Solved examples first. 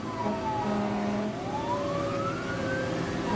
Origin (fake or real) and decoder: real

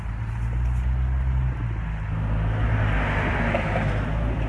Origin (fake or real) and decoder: real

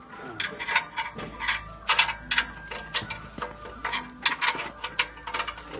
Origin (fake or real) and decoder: real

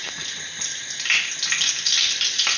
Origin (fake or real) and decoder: real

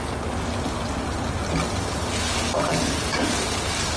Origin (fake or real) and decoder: real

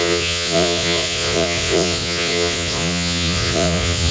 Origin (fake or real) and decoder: fake, vocoder, Vocos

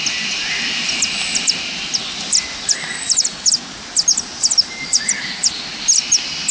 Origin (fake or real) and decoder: real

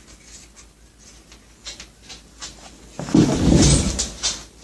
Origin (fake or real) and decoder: real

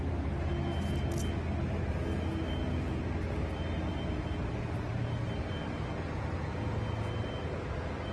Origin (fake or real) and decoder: real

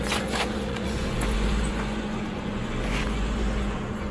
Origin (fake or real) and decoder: fake, vocoder, Vocos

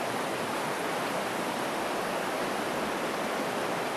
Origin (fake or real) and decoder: real